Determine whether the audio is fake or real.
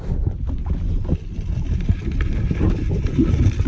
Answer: real